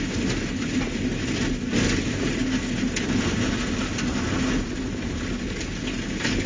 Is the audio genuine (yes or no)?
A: yes